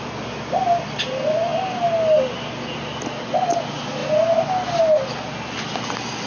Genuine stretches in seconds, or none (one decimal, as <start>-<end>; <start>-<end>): 0.0-6.3